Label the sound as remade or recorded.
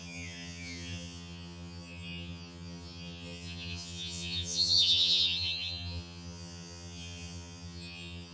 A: remade